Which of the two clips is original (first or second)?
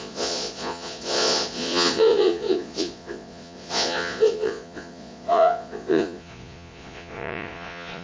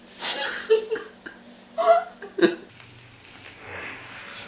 second